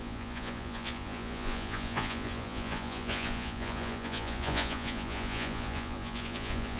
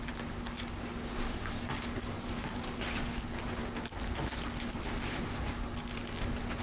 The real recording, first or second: second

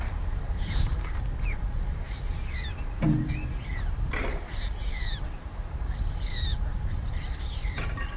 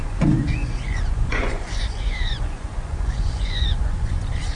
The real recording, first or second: first